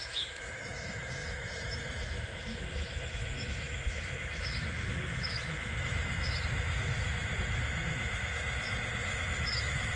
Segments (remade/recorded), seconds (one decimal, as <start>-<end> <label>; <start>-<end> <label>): 0.0-10.0 remade